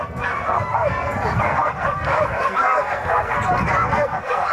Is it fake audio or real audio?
fake